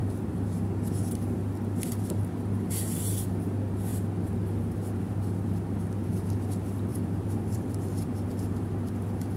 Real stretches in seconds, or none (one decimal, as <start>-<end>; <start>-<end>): 0.9-6.9; 8.3-9.4

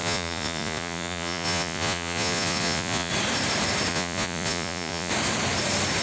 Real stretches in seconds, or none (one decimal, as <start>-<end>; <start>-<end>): 3.1-3.9; 5.1-6.0

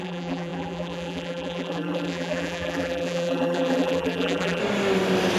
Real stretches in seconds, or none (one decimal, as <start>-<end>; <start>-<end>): 4.6-5.4

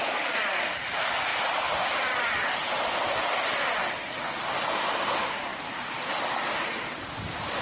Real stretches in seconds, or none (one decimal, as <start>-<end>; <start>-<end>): 0.0-7.6

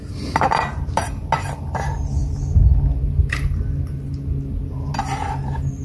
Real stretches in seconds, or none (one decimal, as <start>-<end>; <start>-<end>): 0.0-5.8

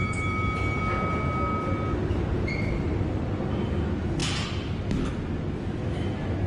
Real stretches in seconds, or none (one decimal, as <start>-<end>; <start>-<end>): 0.8-2.3; 3.2-6.5

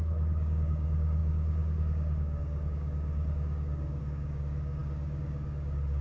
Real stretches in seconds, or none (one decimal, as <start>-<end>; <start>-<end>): none